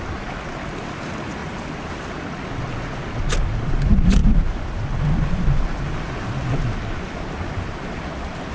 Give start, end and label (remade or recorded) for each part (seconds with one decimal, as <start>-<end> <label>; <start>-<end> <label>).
0.0-8.5 recorded